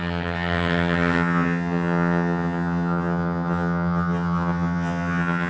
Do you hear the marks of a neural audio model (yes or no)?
yes